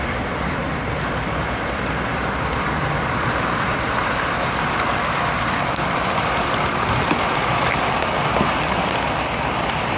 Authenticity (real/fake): fake